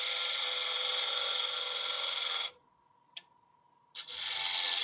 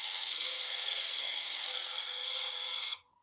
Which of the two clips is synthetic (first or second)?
second